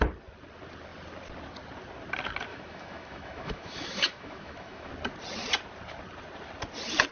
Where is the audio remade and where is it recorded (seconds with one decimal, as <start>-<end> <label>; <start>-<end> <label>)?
0.0-2.5 recorded; 2.5-4.9 remade; 4.9-7.1 recorded